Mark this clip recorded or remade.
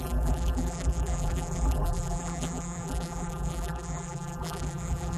remade